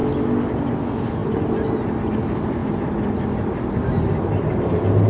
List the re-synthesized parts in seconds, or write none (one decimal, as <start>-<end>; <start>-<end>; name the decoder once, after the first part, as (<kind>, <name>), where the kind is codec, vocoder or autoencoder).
none